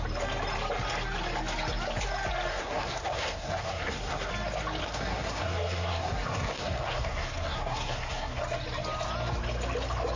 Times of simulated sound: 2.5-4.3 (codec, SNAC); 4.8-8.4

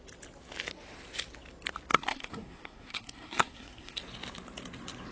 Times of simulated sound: 1.9-4.0 (codec, SNAC)